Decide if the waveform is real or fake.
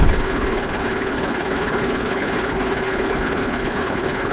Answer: fake